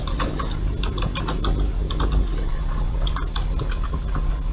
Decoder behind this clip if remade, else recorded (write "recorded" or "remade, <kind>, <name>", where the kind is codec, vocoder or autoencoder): recorded